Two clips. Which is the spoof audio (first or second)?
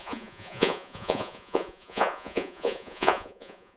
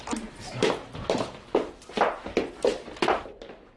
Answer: first